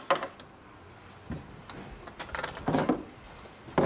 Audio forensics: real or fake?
real